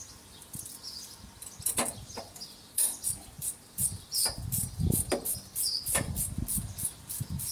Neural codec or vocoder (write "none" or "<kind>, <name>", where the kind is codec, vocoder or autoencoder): vocoder, BigVGAN v2